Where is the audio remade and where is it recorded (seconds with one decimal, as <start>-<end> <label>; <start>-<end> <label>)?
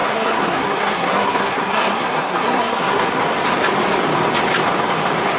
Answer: 0.0-3.2 remade; 3.2-5.4 recorded